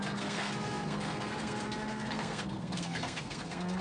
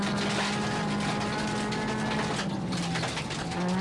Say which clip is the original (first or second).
second